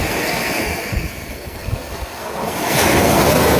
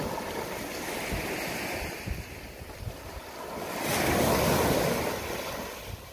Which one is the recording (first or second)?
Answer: second